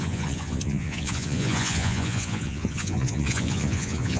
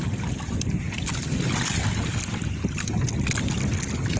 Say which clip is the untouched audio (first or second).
second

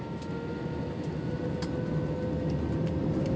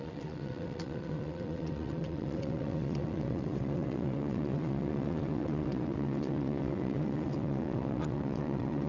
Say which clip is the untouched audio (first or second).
first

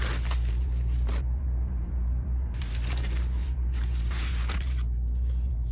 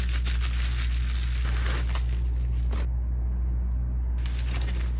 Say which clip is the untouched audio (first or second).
second